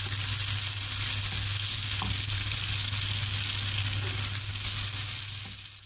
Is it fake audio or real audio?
real